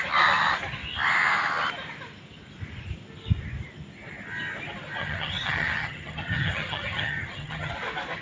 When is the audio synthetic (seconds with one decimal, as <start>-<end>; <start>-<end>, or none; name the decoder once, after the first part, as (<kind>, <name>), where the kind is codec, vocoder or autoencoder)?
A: 5.0-7.7 (vocoder, HiFi-GAN)